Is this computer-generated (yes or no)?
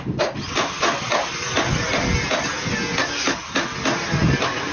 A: no